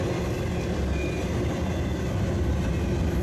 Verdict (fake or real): real